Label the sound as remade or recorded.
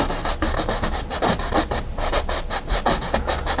recorded